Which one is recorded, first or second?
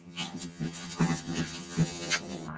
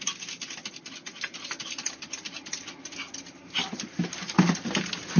second